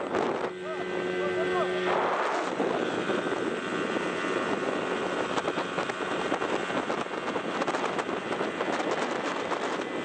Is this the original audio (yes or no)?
yes